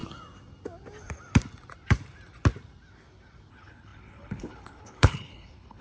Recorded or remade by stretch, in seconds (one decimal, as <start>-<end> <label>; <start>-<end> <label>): 0.0-3.5 recorded; 3.5-5.8 remade